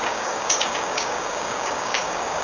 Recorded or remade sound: remade